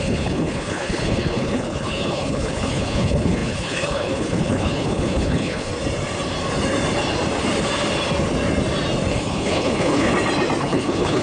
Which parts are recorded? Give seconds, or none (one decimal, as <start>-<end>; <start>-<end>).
5.7-9.1; 10.1-10.6